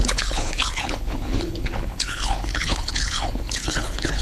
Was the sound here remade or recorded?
remade